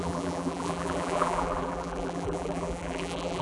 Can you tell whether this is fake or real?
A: fake